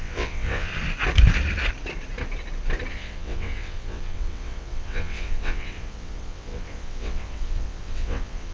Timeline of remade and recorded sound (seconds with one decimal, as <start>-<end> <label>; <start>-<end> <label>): 0.0-0.7 remade; 0.7-2.9 recorded; 2.9-8.5 remade